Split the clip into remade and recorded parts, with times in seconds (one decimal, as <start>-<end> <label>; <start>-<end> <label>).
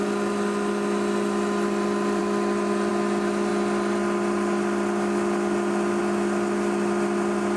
0.0-7.6 recorded